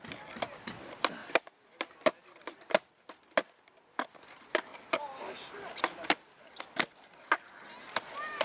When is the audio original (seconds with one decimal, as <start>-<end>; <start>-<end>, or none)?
0.0-8.4